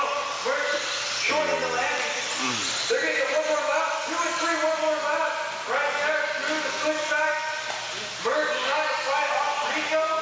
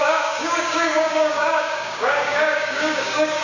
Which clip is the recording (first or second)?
first